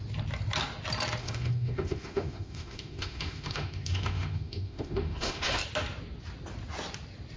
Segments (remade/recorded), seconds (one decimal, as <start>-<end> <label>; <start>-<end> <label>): 0.0-1.2 recorded; 1.2-5.6 remade; 5.6-7.4 recorded